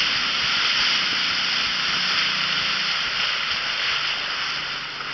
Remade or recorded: recorded